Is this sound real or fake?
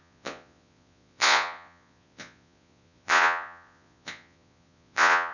fake